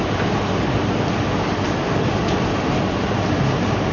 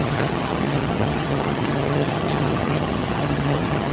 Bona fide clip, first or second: first